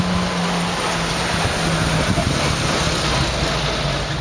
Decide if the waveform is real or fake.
real